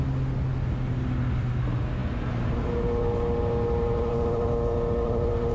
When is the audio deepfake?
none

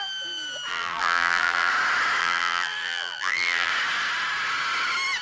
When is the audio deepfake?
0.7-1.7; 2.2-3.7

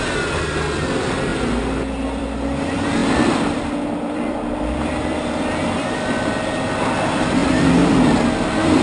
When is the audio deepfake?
3.0-6.3; 7.4-7.9

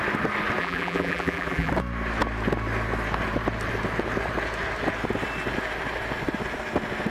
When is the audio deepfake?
0.6-1.7